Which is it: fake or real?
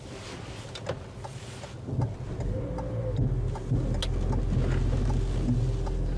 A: real